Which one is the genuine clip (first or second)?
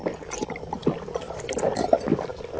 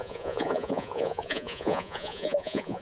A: first